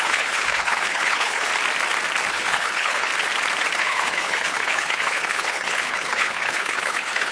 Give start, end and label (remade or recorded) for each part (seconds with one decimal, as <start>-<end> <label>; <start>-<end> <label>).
0.0-1.5 remade; 1.5-2.3 recorded; 2.3-3.1 remade; 3.1-3.8 recorded; 3.8-7.3 remade